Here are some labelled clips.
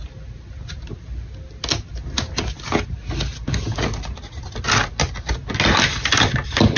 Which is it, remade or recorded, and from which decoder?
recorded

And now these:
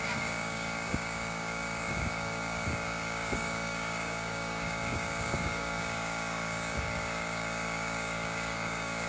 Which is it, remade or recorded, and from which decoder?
remade, codec, DAC